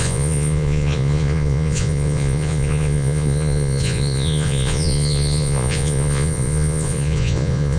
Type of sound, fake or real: fake